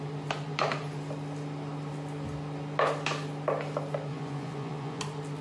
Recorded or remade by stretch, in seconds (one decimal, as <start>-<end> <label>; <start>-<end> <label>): 0.0-4.1 recorded; 4.1-5.0 remade; 5.0-5.4 recorded